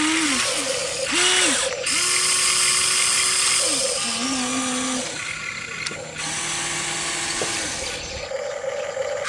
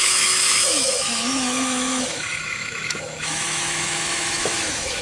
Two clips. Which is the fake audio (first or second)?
second